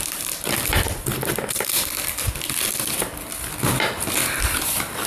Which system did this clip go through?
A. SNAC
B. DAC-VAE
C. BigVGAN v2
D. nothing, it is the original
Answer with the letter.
D